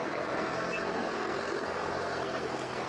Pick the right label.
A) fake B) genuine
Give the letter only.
A